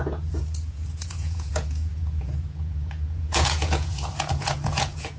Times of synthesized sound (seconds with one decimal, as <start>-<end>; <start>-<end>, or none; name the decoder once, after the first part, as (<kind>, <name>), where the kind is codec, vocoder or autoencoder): 0.0-5.2 (vocoder, Vocos)